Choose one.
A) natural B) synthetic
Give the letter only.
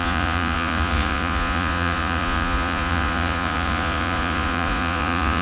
B